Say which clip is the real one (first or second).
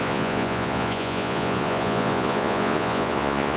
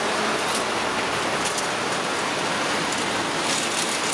second